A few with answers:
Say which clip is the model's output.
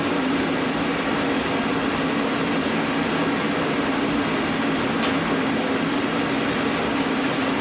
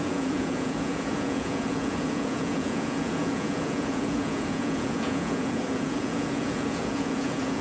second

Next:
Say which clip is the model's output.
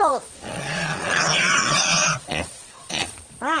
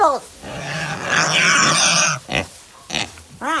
first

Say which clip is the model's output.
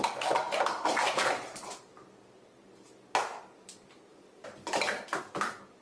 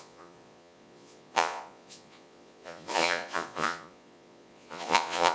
second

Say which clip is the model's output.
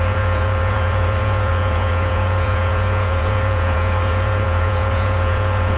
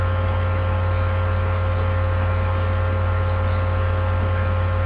first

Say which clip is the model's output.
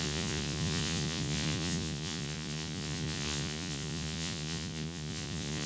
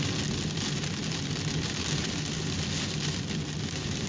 first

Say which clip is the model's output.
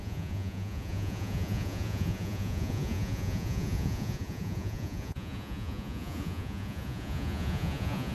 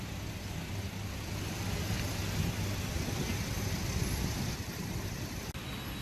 first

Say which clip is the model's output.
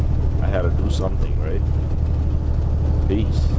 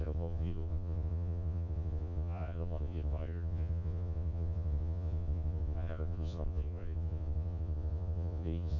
second